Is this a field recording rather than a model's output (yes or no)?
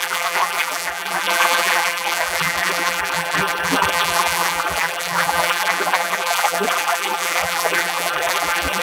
no